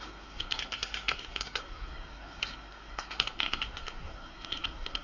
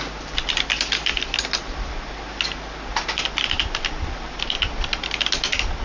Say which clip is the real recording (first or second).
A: second